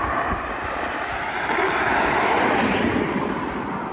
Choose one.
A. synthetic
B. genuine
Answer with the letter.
A